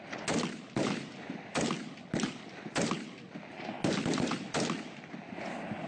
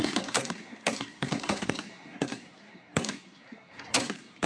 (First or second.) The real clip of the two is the first